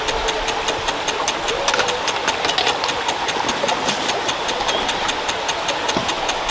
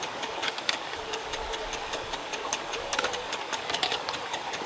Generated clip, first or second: second